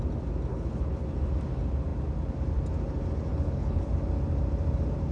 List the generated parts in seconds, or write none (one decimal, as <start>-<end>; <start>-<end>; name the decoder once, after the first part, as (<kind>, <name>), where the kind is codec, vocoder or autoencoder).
0.5-1.1 (codec, HILCodec); 3.3-3.9